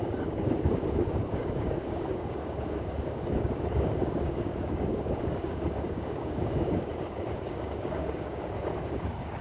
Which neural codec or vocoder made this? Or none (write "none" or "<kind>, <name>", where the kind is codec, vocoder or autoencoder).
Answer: codec, DAC